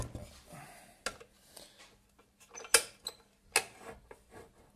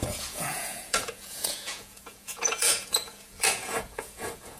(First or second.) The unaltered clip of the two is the first